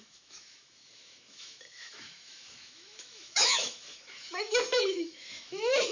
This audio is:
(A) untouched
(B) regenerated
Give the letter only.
B